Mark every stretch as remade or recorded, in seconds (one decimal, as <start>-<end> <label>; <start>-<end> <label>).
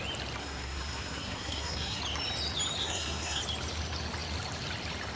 0.0-0.4 recorded; 0.4-2.0 remade; 2.0-2.8 recorded; 2.8-3.4 remade; 3.4-5.2 recorded